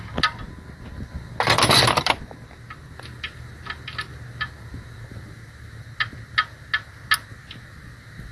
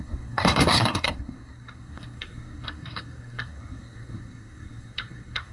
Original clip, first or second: first